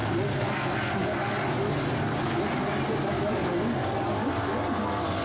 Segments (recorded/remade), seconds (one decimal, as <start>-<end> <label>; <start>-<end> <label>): 0.0-5.2 recorded